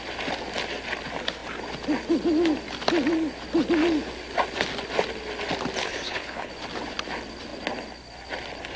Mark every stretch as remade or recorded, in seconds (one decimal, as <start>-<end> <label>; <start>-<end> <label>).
0.0-5.8 recorded; 5.8-6.5 remade; 6.5-8.8 recorded